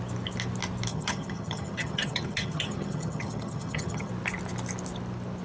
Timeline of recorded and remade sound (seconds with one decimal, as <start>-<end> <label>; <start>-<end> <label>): 0.0-0.9 recorded; 0.9-4.1 remade; 4.1-5.4 recorded